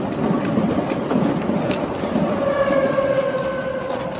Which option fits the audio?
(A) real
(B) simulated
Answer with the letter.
A